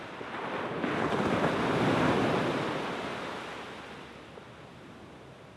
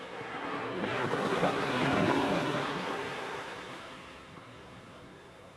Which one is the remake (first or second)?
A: second